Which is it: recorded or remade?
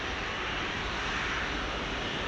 recorded